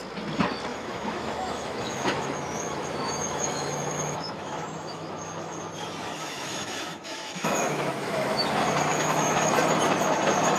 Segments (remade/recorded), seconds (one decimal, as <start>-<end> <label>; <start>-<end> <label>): 0.0-0.7 recorded; 0.7-5.6 remade; 5.6-6.0 recorded; 6.0-8.5 remade; 8.5-8.9 recorded; 8.9-9.5 remade; 9.5-10.6 recorded